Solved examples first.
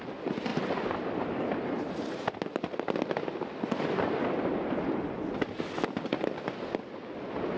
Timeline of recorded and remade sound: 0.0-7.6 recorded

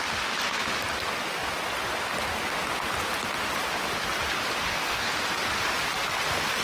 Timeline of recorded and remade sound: 0.0-4.6 recorded; 4.6-5.1 remade; 5.1-6.6 recorded

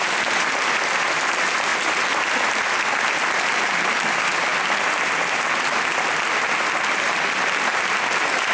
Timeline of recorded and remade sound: 0.0-8.5 recorded

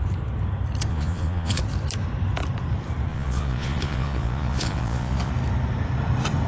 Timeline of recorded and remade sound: 0.0-0.9 recorded; 0.9-1.6 remade; 1.6-3.1 recorded; 3.1-5.3 remade; 5.3-6.5 recorded